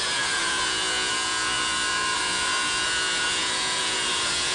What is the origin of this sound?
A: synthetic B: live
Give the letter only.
A